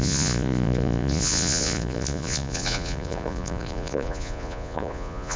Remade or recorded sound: remade